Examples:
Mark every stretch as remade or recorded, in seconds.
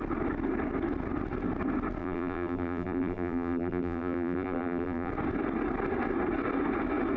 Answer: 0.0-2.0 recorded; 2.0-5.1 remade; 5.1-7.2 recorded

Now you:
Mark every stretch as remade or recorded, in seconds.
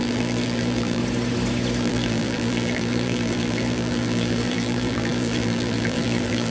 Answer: 0.0-1.0 remade; 1.0-1.8 recorded; 1.8-6.5 remade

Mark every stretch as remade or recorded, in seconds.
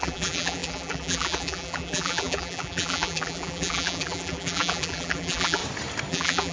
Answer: 0.0-5.6 remade; 5.6-6.1 recorded; 6.1-6.5 remade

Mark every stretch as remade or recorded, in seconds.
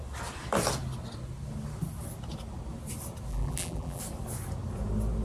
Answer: 0.0-3.3 recorded; 3.3-4.0 remade; 4.0-5.2 recorded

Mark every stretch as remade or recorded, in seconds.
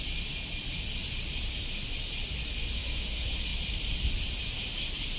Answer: 0.0-3.5 recorded; 3.5-4.1 remade; 4.1-5.2 recorded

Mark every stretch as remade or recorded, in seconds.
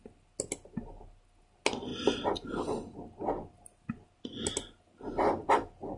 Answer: 0.0-6.0 recorded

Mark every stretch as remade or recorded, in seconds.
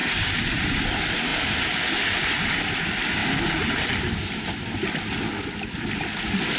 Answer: 0.0-0.7 remade; 0.7-1.3 recorded; 1.3-1.8 remade; 1.8-6.6 recorded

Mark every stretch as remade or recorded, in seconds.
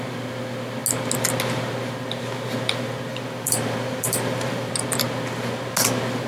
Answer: 0.0-3.1 recorded; 3.1-4.7 remade; 4.7-6.3 recorded